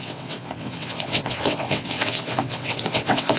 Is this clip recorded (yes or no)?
no